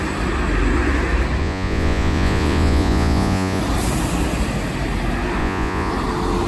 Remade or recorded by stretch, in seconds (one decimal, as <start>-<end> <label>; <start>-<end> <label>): 0.0-1.4 recorded; 1.4-3.6 remade; 3.6-5.4 recorded; 5.4-5.9 remade; 5.9-6.5 recorded